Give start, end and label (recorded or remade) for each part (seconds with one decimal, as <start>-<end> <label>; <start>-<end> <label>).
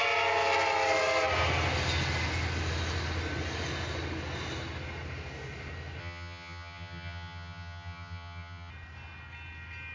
0.0-6.0 recorded; 6.0-8.7 remade; 8.7-9.9 recorded